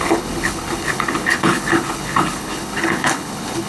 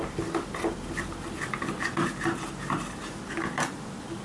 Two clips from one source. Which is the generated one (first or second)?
first